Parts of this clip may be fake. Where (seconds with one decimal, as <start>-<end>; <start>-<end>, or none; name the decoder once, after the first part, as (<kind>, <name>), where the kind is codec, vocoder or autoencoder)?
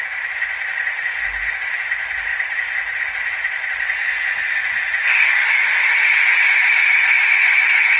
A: none